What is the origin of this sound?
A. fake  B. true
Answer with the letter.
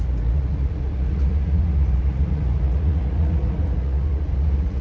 A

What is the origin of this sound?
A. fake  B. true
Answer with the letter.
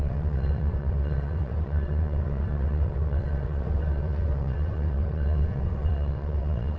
A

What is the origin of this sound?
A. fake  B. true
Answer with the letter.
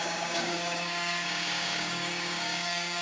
A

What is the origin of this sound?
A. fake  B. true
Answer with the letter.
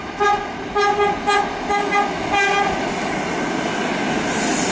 B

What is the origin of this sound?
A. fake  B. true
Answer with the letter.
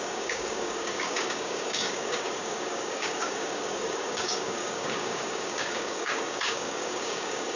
A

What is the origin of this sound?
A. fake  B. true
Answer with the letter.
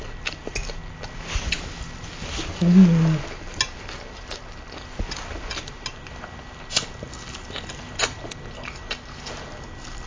B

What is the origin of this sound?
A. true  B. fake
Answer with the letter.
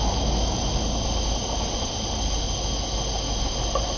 A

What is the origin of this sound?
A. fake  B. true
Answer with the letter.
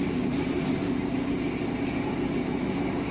B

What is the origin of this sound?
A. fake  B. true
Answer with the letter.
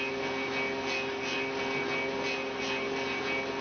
B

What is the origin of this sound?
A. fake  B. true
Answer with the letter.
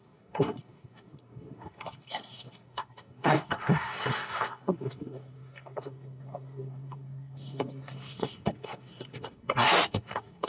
A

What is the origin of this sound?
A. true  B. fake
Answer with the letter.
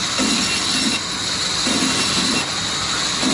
A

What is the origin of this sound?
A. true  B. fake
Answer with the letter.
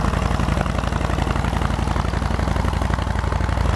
A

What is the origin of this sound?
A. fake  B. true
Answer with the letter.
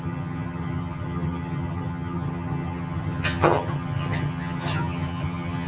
A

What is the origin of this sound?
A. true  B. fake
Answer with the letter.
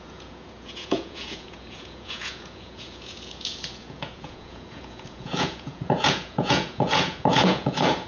B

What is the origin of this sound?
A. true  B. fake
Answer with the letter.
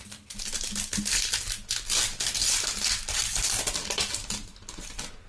A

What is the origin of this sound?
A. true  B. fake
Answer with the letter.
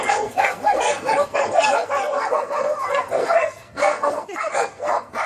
B